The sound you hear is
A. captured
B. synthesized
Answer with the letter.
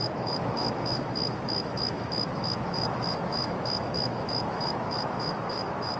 B